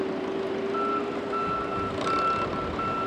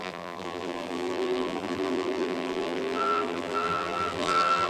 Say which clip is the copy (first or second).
second